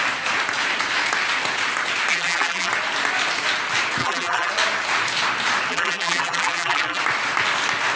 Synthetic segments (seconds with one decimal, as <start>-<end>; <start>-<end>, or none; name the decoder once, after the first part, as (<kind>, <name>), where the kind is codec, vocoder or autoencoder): 2.1-2.7 (vocoder, BigVGAN v2); 4.0-4.5; 5.7-7.0